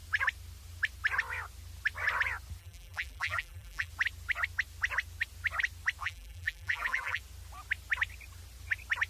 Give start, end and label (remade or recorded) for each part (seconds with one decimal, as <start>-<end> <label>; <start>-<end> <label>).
0.0-2.6 recorded; 2.6-3.9 remade; 3.9-6.0 recorded; 6.0-7.2 remade; 7.2-9.1 recorded